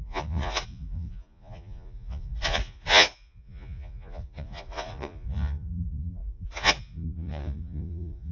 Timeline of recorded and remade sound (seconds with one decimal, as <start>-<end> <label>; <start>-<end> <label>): 0.0-8.3 remade